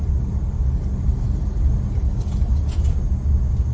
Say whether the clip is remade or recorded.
recorded